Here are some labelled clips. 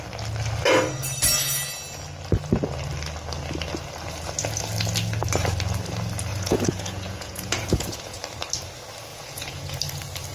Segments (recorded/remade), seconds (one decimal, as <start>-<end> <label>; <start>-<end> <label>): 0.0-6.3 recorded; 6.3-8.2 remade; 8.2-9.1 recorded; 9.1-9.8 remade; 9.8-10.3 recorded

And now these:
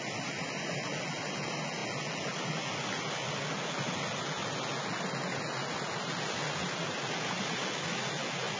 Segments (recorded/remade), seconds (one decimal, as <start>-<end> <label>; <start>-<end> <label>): 0.0-8.6 recorded

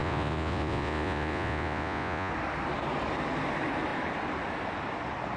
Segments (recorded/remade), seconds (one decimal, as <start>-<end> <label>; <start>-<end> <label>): 0.0-2.3 remade; 2.3-5.4 recorded

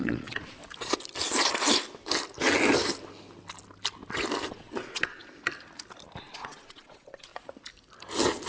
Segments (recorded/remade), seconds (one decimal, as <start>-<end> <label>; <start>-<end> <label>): 0.0-0.6 remade; 0.6-4.5 recorded; 4.5-5.2 remade; 5.2-6.2 recorded; 6.2-7.3 remade; 7.3-8.5 recorded

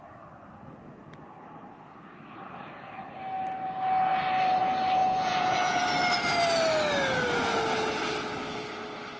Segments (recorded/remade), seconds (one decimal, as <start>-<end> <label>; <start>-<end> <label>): 0.0-5.0 recorded; 5.0-5.8 remade; 5.8-9.2 recorded

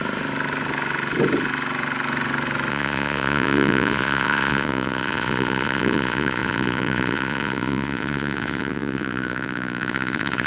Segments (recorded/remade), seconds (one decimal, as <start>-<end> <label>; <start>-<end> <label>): 0.0-2.7 recorded; 2.7-10.5 remade